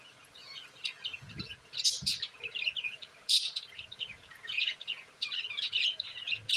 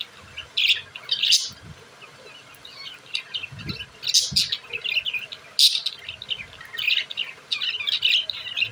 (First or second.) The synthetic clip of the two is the first